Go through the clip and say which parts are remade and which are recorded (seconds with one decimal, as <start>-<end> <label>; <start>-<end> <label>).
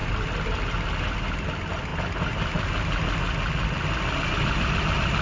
0.0-5.2 recorded